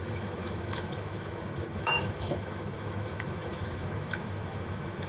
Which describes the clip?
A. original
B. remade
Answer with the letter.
B